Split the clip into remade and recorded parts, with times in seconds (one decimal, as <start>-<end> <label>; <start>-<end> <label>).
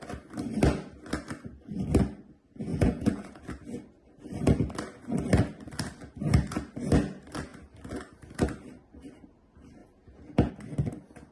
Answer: 0.0-2.7 recorded; 2.7-3.4 remade; 3.4-9.8 recorded; 9.8-10.5 remade; 10.5-11.3 recorded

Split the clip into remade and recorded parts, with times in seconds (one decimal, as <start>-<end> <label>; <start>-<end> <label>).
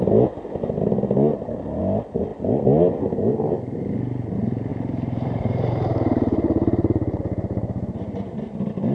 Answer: 0.0-1.3 recorded; 1.3-1.8 remade; 1.8-4.7 recorded; 4.7-7.2 remade; 7.2-8.9 recorded